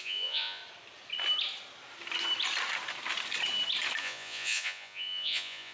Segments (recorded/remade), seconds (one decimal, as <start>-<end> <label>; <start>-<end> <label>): 0.0-0.6 remade; 0.6-4.0 recorded; 4.0-5.7 remade

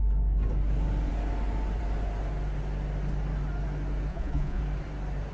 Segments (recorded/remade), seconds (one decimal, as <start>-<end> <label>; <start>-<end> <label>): 0.0-4.1 recorded; 4.1-4.6 remade; 4.6-5.3 recorded

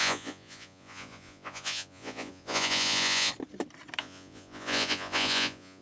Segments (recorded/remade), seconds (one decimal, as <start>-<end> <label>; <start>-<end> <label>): 0.0-3.3 remade; 3.3-4.0 recorded; 4.0-5.8 remade

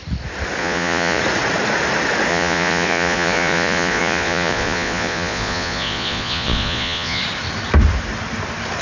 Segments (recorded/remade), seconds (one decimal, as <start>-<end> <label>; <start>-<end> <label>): 0.0-0.6 recorded; 0.6-1.2 remade; 1.2-2.3 recorded; 2.3-7.2 remade; 7.2-8.8 recorded